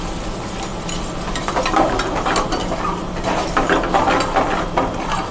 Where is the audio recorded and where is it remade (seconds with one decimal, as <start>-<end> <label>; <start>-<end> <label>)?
0.0-3.0 recorded; 3.0-3.8 remade; 3.8-5.3 recorded

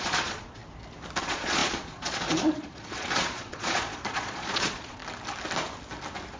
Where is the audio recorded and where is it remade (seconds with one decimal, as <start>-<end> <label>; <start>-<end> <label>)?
0.0-0.6 remade; 0.6-1.2 recorded; 1.2-5.0 remade; 5.0-6.4 recorded